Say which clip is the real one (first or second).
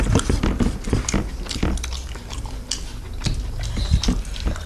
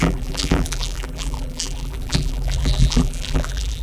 first